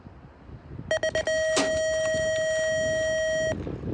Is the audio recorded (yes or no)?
yes